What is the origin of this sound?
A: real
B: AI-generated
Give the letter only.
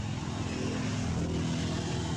A